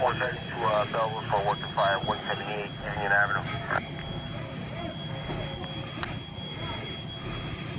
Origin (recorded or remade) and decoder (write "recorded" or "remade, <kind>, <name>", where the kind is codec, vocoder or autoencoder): recorded